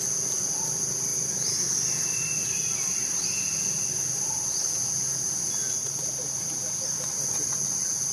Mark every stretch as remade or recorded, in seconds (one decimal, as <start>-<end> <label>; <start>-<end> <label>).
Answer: 0.0-8.1 recorded

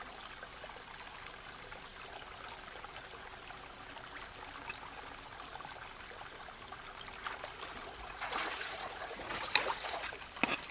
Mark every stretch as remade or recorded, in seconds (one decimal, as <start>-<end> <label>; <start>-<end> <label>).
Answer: 0.0-7.8 recorded; 7.8-10.1 remade; 10.1-10.7 recorded

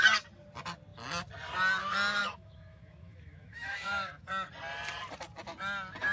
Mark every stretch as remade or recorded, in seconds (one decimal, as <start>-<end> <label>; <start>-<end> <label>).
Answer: 0.0-2.2 recorded; 2.2-4.2 remade; 4.2-6.1 recorded

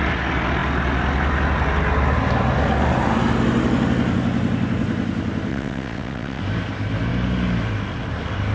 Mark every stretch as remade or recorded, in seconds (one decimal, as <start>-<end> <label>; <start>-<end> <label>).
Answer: 0.0-5.5 recorded; 5.5-6.4 remade; 6.4-8.5 recorded

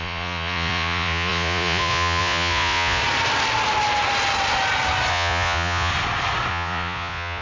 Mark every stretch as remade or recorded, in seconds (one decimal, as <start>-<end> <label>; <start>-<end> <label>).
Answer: 0.0-3.0 remade; 3.0-5.1 recorded; 5.1-5.9 remade; 5.9-6.5 recorded; 6.5-7.4 remade

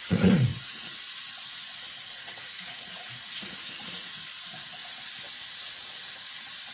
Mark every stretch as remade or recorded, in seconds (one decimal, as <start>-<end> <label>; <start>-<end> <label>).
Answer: 0.0-4.8 remade; 4.8-5.5 recorded; 5.5-6.7 remade

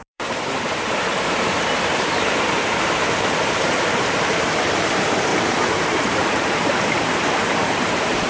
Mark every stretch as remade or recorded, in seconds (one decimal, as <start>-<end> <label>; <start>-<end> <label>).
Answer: 0.0-8.3 remade